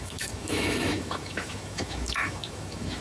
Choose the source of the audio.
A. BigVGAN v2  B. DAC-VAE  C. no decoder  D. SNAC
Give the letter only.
B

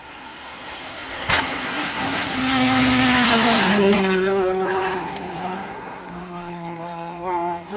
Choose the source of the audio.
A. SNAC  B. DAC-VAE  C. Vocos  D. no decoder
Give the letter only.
A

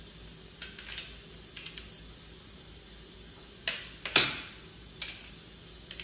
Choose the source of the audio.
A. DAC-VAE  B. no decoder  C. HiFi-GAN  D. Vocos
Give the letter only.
B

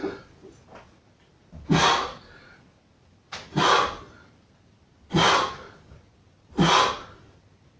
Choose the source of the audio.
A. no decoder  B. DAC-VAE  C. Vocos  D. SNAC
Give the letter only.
A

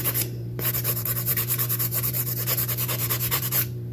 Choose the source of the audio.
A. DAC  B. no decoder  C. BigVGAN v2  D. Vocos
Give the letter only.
C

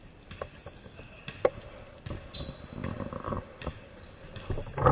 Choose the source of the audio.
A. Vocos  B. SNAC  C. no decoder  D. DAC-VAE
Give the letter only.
C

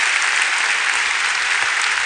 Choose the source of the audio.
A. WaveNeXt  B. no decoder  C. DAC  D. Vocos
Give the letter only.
B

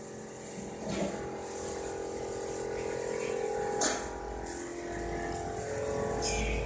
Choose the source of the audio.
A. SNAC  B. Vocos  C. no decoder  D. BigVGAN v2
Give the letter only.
C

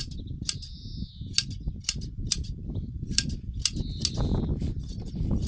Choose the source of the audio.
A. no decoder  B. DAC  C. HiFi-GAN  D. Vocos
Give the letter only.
A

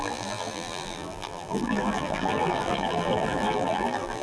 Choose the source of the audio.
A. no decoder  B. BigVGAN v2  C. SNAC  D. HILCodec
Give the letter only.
B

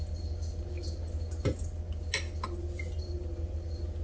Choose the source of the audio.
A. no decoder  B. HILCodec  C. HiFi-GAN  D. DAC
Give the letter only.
A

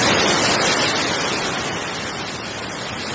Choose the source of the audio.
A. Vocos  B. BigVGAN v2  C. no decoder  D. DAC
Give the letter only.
C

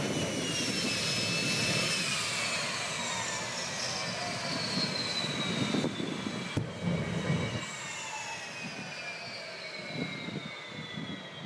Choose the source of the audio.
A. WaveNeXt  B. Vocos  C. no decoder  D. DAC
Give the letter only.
C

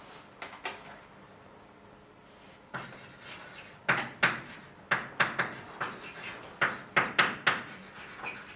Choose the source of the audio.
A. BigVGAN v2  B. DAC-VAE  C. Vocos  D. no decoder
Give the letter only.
D